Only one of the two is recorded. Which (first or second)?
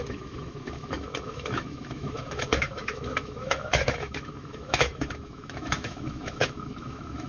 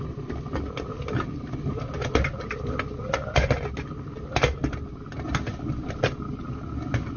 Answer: second